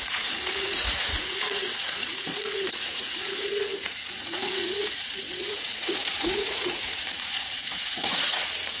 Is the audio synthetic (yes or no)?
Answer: yes